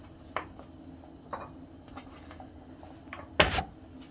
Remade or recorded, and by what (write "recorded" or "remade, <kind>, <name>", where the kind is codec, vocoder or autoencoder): recorded